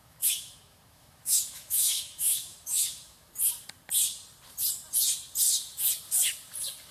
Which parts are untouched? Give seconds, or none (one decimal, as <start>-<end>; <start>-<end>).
3.3-6.9